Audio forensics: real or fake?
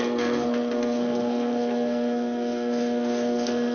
fake